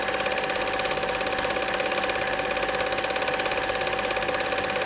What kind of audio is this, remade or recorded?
recorded